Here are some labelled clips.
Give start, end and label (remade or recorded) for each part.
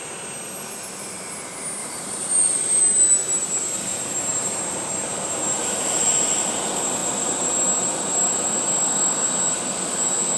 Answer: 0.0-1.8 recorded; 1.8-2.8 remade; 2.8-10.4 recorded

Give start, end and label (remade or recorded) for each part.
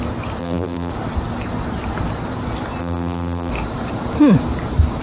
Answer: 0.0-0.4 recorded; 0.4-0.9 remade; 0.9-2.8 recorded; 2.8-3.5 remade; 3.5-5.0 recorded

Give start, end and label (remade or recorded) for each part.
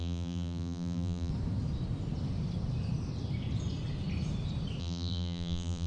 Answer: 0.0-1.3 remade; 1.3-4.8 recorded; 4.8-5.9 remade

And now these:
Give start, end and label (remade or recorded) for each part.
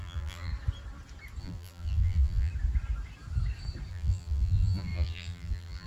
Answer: 0.0-0.5 remade; 0.5-1.4 recorded; 1.4-2.5 remade; 2.5-3.9 recorded; 3.9-5.9 remade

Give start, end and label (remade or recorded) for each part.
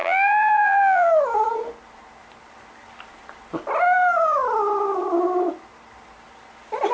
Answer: 0.0-1.1 remade; 1.1-6.9 recorded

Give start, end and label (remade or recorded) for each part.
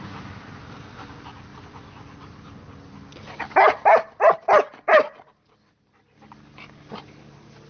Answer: 0.0-7.7 recorded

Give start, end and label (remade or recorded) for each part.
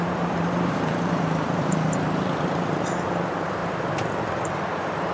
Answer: 0.0-5.1 remade